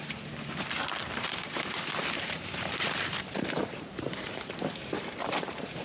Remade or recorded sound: remade